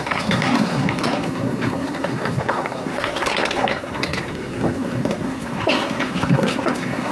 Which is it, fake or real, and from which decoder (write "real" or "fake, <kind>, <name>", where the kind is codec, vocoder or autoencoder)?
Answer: fake, codec, SNAC